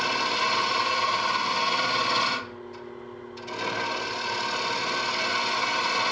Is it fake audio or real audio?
real